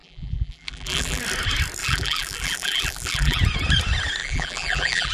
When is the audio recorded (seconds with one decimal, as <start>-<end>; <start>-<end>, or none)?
1.2-1.8; 3.4-4.2